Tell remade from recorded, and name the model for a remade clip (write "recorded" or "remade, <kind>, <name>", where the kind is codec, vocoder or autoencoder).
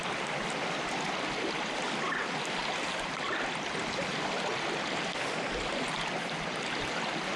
recorded